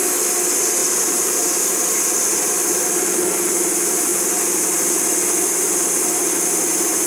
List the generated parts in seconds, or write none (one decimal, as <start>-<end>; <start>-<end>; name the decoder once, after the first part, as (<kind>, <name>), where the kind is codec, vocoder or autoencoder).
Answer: 0.8-2.0 (vocoder, BigVGAN v2)